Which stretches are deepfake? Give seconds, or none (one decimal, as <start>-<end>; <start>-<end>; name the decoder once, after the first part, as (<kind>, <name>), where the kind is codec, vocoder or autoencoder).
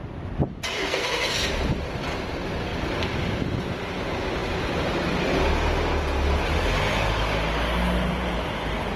0.8-1.4 (codec, SNAC)